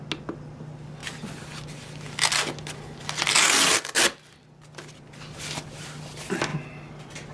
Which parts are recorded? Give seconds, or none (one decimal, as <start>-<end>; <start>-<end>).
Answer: 0.0-7.3